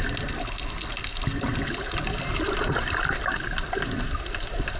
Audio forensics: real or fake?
real